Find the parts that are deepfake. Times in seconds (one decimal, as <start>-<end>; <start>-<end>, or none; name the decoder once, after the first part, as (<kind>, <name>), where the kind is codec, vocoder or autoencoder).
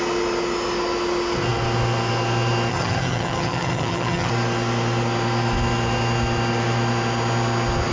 2.7-4.3 (vocoder, HiFi-GAN)